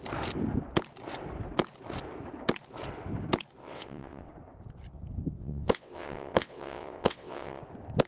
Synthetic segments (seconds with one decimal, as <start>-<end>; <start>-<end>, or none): 3.6-4.3; 5.4-7.6